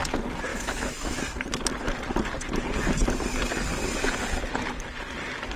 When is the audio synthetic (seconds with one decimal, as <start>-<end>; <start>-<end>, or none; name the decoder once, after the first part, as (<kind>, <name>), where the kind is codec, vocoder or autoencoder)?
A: 0.5-1.2 (autoencoder, DAC-VAE)